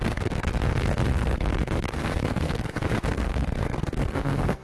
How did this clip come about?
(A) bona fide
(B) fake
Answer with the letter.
B